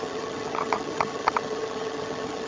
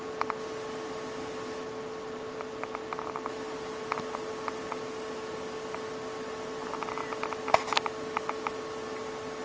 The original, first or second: second